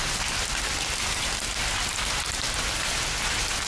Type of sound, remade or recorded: recorded